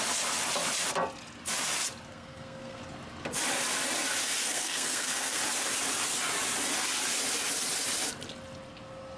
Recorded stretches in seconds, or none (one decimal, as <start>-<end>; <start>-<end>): 0.0-2.1; 2.8-4.4; 5.4-9.2